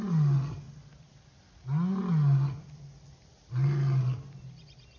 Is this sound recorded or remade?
recorded